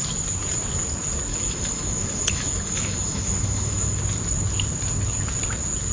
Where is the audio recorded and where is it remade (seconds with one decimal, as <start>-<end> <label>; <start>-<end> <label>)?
0.0-1.3 recorded; 1.3-4.0 remade; 4.0-5.9 recorded

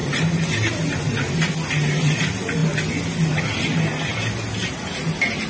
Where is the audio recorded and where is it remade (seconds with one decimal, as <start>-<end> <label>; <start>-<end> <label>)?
0.0-5.5 recorded

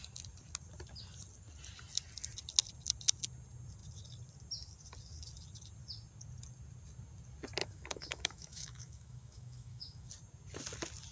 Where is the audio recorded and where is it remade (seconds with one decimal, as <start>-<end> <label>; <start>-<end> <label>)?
0.0-7.6 recorded; 7.6-10.1 remade; 10.1-11.1 recorded

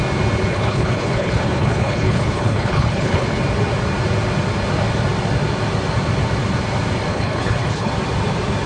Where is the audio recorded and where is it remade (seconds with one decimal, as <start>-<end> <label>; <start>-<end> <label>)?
0.0-0.5 recorded; 0.5-3.4 remade; 3.4-7.1 recorded; 7.1-7.9 remade; 7.9-8.7 recorded